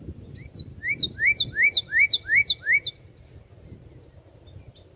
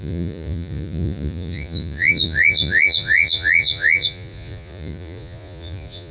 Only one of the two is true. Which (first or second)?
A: first